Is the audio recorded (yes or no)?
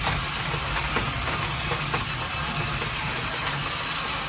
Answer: yes